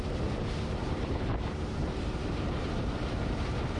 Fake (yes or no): yes